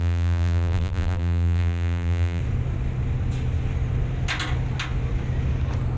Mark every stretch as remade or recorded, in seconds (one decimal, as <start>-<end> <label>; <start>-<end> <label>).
0.0-2.4 remade; 2.4-6.0 recorded